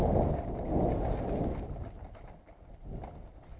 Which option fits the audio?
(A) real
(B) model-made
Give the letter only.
A